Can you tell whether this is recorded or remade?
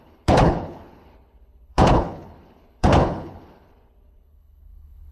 remade